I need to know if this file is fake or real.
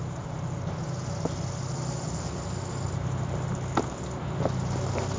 real